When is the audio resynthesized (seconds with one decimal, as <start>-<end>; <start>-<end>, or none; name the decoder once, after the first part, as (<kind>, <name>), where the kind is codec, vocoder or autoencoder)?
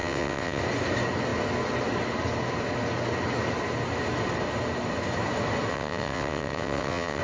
0.0-0.6 (vocoder, WaveNeXt); 5.7-7.2